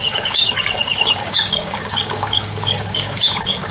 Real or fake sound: fake